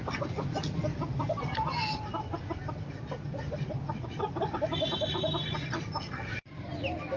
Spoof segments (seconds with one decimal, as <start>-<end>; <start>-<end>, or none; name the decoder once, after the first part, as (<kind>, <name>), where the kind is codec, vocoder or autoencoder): 5.4-6.7 (vocoder, BigVGAN v2)